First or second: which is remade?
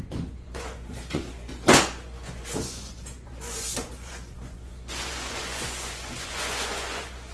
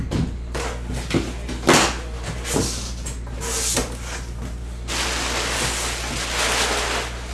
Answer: first